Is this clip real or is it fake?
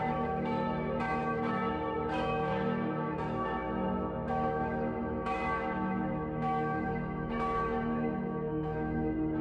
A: fake